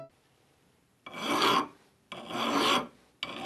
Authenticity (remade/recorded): recorded